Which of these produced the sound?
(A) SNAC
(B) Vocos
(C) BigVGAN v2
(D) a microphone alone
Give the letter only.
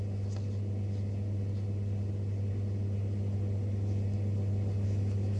D